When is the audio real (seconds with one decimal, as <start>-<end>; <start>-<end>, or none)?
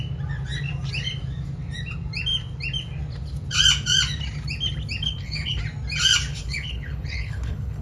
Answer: 0.0-5.0; 5.6-6.3